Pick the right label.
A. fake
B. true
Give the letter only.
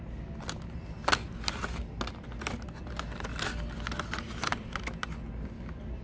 B